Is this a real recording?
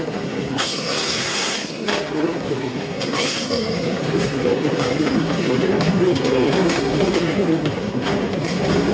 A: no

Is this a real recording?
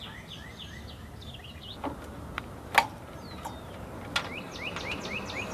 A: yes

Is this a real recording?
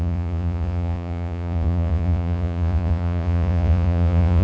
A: no